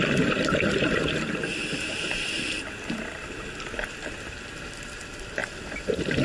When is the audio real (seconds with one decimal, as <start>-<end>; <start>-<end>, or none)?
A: none